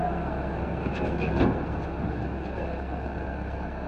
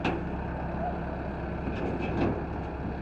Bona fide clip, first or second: second